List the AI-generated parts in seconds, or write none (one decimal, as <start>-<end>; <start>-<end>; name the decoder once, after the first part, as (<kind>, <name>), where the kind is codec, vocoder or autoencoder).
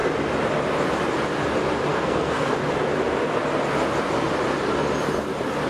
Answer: 1.9-2.5 (codec, SNAC)